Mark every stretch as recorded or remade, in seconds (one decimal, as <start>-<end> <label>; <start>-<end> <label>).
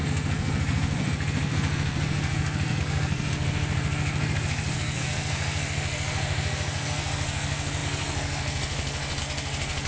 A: 0.0-9.9 remade